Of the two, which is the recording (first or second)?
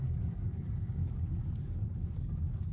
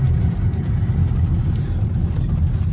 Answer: second